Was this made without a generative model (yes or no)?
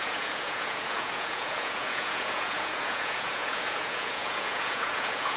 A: no